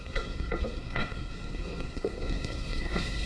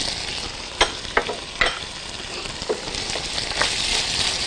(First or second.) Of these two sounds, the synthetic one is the first